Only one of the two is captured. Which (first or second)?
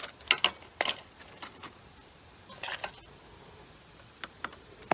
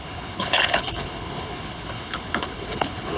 first